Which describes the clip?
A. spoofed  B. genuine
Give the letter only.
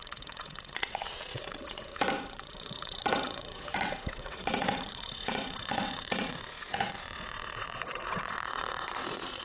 A